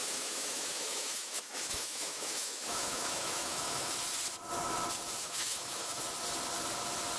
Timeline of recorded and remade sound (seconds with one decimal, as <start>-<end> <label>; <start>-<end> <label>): 0.0-3.9 remade; 3.9-5.2 recorded; 5.2-6.0 remade; 6.0-7.2 recorded